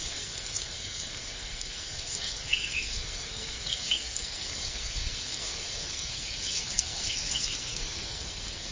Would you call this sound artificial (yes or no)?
yes